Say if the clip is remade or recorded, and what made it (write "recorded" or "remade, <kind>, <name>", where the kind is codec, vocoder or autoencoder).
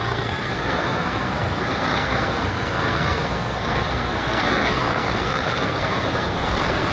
remade, codec, SNAC